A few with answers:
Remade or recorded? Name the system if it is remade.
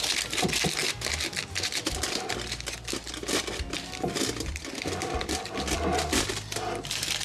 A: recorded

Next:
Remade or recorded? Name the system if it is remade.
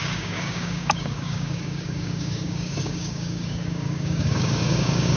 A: remade, codec, DAC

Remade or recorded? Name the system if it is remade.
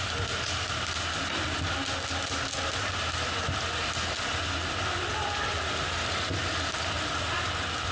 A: recorded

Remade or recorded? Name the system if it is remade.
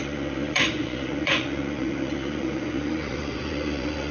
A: remade, vocoder, Vocos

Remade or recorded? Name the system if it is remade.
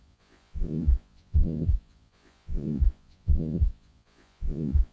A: remade, vocoder, Vocos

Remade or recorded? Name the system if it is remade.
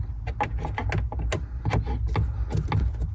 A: recorded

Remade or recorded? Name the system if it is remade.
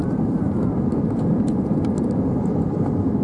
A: remade, vocoder, BigVGAN v2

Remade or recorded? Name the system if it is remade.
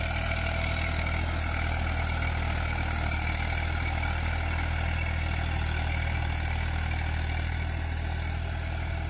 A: recorded